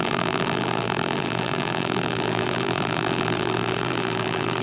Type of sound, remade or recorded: remade